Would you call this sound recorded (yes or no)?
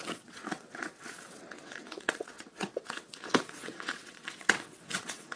no